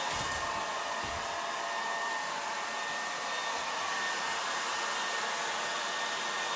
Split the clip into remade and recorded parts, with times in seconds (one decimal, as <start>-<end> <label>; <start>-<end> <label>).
0.0-6.6 recorded